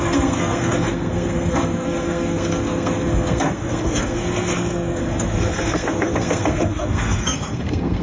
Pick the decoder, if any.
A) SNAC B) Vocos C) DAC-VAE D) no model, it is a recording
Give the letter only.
A